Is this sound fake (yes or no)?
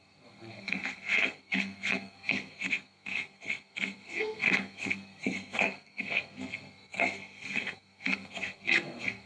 yes